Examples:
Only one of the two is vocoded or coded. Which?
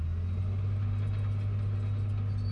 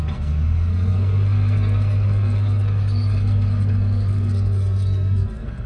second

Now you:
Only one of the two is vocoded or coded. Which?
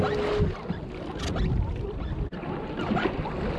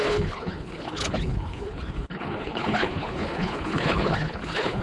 second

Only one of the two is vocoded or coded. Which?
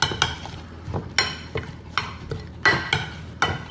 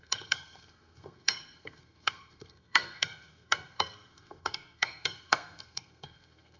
second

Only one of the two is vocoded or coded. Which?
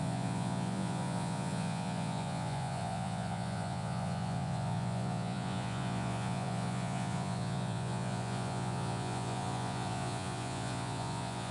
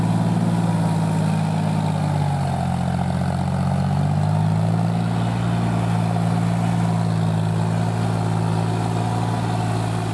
first